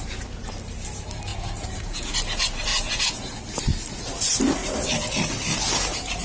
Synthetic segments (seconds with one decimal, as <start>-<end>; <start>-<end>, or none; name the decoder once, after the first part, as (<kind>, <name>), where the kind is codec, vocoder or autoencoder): 1.3-2.1 (vocoder, Vocos); 2.7-3.3